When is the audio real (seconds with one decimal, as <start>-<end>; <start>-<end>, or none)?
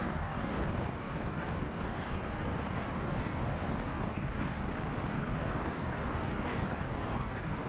4.6-5.1